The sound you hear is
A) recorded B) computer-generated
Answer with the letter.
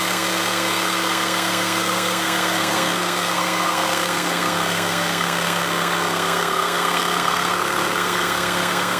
B